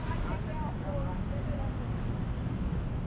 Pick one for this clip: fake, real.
real